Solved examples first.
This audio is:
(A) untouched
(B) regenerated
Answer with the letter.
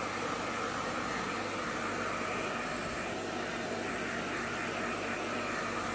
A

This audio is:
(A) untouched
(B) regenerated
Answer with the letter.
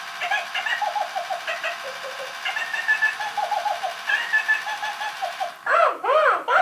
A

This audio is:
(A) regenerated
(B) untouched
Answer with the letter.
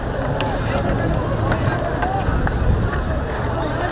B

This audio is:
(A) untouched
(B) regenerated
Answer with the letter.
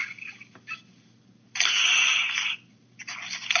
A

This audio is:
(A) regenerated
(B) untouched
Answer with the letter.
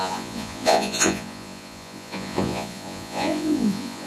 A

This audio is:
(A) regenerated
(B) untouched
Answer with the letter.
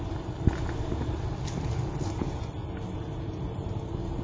B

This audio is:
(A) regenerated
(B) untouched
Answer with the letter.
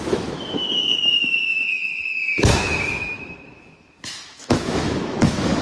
A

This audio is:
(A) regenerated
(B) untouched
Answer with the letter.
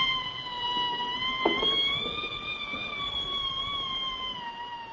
B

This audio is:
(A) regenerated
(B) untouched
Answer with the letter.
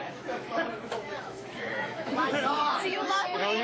A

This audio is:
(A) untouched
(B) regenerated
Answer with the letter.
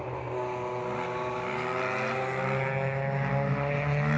A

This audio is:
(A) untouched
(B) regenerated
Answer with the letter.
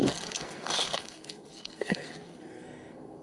B